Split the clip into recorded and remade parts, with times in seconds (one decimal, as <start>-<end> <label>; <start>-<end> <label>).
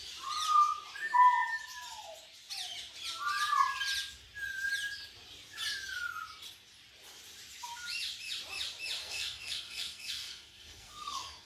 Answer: 0.0-9.0 recorded; 9.0-11.5 remade